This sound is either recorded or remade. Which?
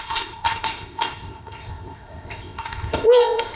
remade